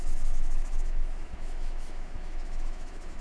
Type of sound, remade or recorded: remade